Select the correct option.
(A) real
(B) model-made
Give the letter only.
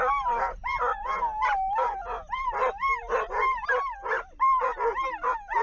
A